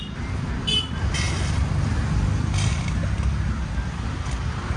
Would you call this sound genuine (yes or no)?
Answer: yes